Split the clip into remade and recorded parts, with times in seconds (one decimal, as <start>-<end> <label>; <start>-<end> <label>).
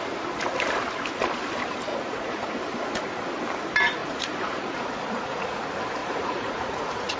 0.0-1.9 recorded; 1.9-2.6 remade; 2.6-4.0 recorded; 4.0-5.6 remade; 5.6-6.0 recorded; 6.0-7.2 remade